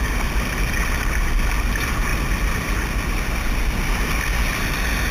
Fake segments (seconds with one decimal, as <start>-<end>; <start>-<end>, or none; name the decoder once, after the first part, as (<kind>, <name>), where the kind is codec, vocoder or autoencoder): none